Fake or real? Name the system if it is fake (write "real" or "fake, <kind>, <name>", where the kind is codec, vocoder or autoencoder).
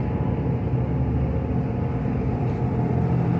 real